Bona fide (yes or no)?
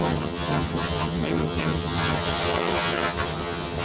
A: no